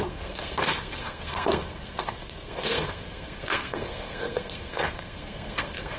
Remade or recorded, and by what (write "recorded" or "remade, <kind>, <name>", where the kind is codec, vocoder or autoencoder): remade, codec, SNAC